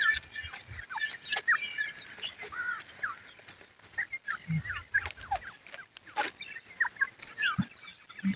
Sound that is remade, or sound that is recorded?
recorded